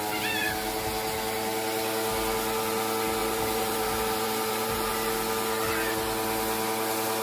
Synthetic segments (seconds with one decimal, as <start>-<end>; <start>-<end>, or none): 3.2-4.9